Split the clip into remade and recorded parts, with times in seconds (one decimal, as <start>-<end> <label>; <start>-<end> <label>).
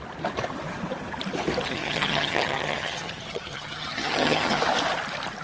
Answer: 0.0-1.7 recorded; 1.7-4.6 remade; 4.6-5.4 recorded